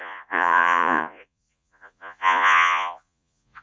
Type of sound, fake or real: fake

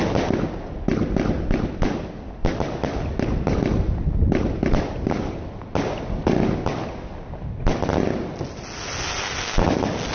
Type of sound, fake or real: real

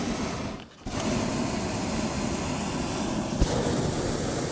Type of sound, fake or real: real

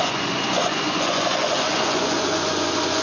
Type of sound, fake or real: fake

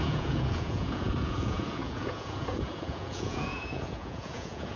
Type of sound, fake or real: fake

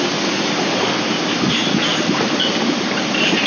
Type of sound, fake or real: fake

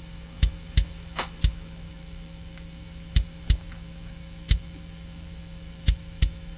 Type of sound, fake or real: fake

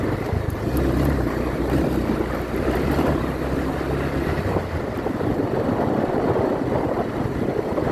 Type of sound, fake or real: real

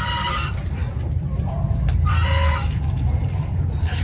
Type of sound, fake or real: fake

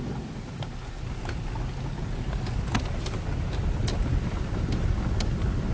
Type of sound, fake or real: real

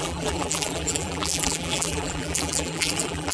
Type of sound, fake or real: fake